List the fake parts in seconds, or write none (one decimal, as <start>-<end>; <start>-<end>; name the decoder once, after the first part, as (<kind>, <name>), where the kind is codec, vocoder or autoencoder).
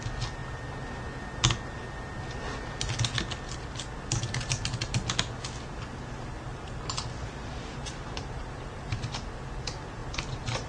6.5-9.1 (vocoder, BigVGAN v2); 10.0-10.7